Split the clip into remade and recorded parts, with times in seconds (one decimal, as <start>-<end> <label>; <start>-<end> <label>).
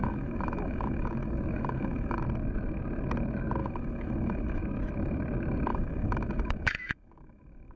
0.0-2.2 remade; 2.2-3.6 recorded; 3.6-4.6 remade; 4.6-5.7 recorded; 5.7-7.8 remade